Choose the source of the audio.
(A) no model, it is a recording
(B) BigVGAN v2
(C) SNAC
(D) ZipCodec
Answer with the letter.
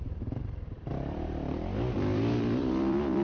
B